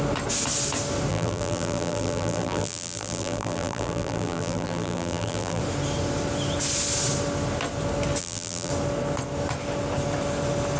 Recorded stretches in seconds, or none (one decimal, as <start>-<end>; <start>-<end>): 0.0-1.1; 5.6-8.2; 8.7-10.8